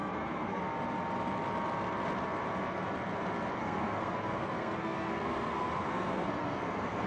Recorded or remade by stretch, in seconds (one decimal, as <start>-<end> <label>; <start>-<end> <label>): 0.0-0.6 remade; 0.6-3.6 recorded; 3.6-7.1 remade